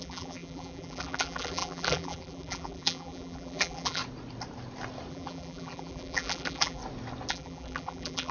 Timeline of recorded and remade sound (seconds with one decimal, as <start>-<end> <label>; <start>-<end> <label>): 0.0-4.0 remade; 4.0-5.1 recorded; 5.1-6.8 remade; 6.8-7.3 recorded; 7.3-8.3 remade